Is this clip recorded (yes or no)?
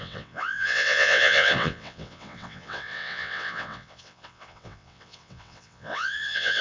no